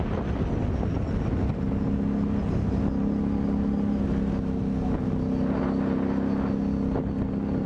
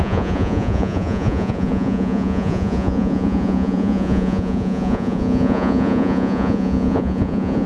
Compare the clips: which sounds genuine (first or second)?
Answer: first